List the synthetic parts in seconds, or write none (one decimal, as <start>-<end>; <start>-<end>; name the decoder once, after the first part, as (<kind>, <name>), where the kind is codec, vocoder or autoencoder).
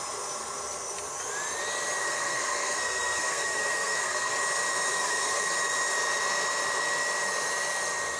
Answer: 2.0-4.3 (codec, SNAC); 4.9-5.5